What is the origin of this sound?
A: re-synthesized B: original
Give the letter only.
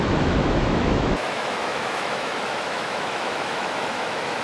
A